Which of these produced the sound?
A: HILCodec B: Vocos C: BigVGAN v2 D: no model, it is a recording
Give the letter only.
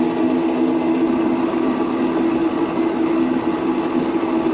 D